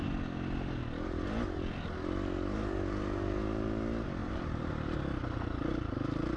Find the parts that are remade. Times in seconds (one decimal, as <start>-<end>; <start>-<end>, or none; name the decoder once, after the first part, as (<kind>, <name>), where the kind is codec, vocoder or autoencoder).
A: 4.2-4.7 (vocoder, BigVGAN v2)